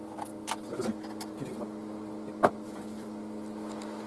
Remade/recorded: recorded